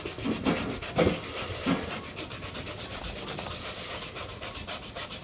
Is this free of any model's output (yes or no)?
yes